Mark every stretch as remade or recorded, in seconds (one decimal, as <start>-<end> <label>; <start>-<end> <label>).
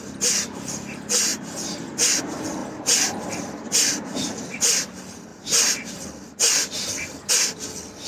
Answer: 0.0-1.3 recorded; 1.3-2.2 remade; 2.2-3.9 recorded; 3.9-4.8 remade; 4.8-8.1 recorded